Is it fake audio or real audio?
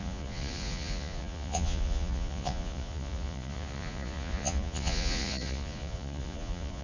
fake